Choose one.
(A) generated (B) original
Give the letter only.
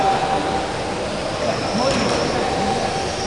B